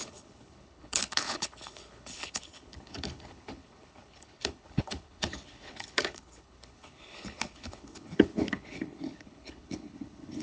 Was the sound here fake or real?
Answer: fake